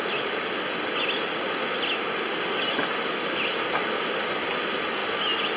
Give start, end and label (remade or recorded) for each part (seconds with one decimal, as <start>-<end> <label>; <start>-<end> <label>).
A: 0.0-5.6 recorded